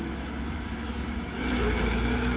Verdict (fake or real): fake